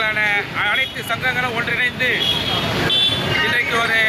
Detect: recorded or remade recorded